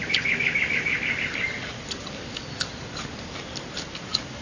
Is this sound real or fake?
real